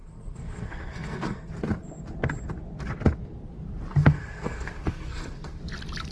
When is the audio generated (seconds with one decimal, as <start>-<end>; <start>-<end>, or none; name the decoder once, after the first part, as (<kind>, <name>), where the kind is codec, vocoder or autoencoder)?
0.0-1.5 (codec, SNAC); 4.0-5.6